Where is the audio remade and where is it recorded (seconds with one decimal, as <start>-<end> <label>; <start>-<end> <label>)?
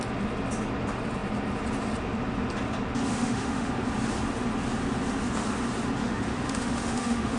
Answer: 0.0-3.1 recorded; 3.1-3.7 remade; 3.7-6.0 recorded; 6.0-7.4 remade